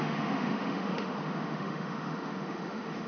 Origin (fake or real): fake